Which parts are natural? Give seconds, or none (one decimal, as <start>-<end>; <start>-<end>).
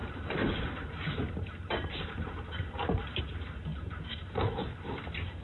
3.2-3.7; 4.3-5.4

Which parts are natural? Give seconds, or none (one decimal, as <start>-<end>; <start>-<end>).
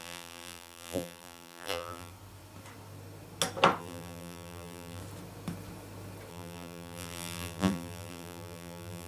2.1-3.8; 5.0-6.3